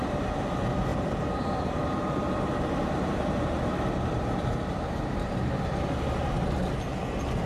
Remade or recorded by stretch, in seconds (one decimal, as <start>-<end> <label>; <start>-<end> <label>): 0.0-0.9 recorded; 0.9-5.4 remade; 5.4-7.5 recorded